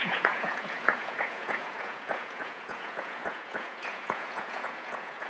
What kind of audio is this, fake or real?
fake